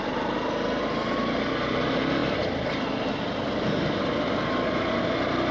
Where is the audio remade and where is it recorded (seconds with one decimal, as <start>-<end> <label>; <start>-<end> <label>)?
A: 0.0-5.5 recorded